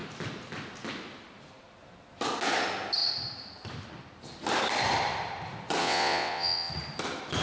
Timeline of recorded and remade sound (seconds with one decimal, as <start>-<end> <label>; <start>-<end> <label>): 0.0-5.8 recorded; 5.8-6.7 remade; 6.7-7.4 recorded